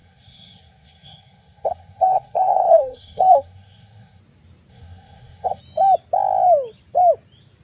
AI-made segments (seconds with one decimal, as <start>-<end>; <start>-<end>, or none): 0.0-4.2; 4.7-5.6